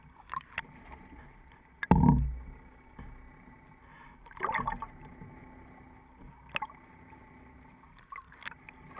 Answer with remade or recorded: recorded